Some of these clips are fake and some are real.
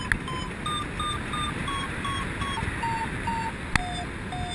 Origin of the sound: real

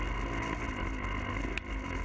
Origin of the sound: real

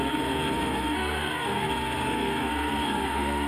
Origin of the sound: fake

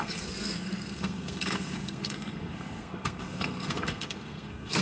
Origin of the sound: fake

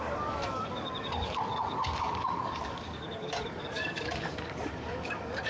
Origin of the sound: fake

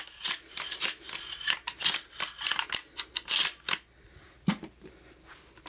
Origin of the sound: real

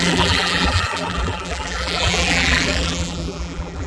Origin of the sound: fake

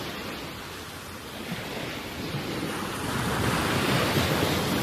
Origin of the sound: real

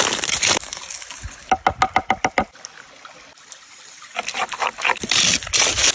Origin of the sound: real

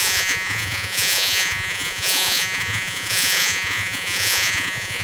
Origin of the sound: fake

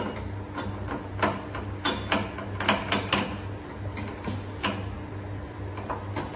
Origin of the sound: real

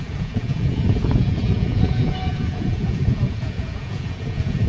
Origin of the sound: fake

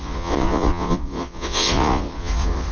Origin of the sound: fake